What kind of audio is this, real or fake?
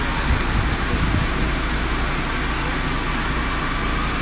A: real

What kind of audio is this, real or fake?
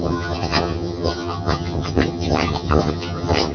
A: fake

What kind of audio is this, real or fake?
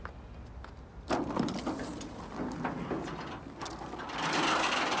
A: real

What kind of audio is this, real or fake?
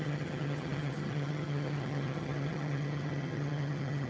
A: fake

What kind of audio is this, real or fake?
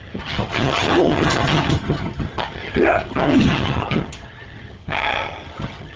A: fake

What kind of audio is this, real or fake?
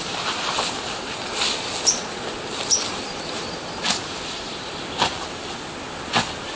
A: real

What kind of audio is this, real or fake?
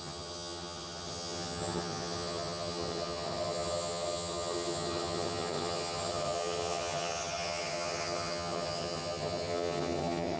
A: fake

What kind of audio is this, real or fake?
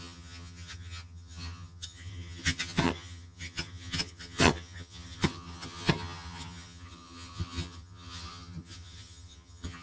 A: fake